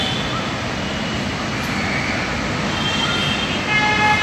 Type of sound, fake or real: real